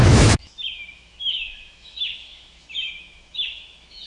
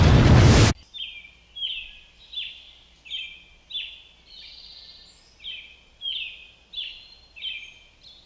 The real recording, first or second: second